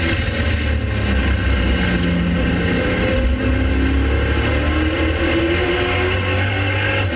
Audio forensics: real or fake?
real